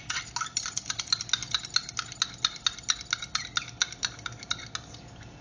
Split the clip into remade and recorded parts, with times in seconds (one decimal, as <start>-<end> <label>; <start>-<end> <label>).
0.0-5.4 recorded